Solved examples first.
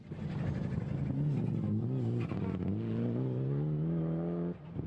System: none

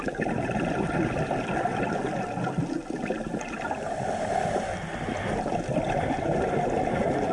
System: none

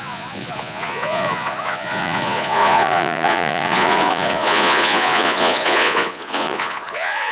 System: vocoder, Vocos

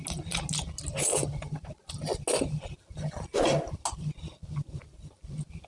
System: none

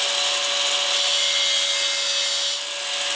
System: none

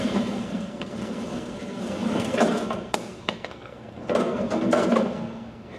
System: codec, SNAC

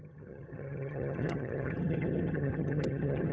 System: vocoder, HiFi-GAN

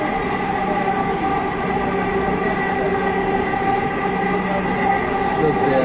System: none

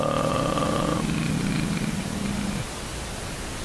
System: none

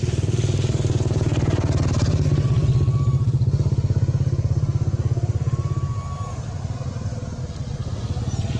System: none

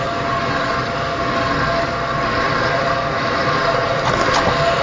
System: none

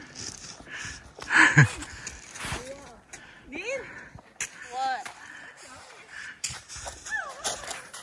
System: none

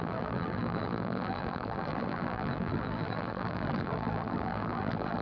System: vocoder, BigVGAN v2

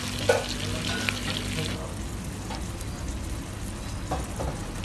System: none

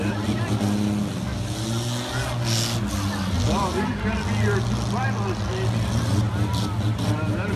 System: none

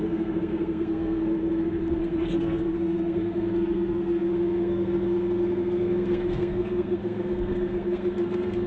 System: codec, SNAC